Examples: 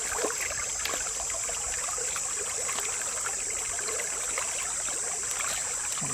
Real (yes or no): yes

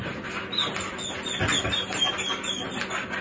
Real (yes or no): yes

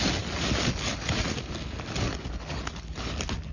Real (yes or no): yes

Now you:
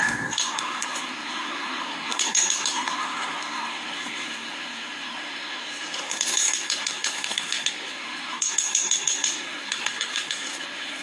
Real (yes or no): no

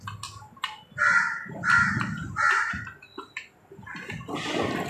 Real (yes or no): yes